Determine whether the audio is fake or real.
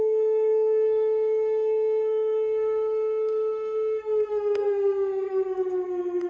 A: fake